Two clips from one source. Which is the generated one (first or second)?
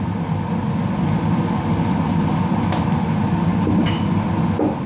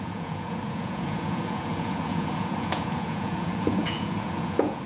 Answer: second